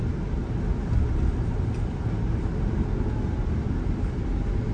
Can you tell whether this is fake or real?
real